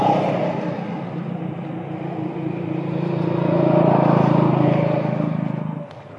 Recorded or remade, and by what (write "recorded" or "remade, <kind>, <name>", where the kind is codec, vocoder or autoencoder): recorded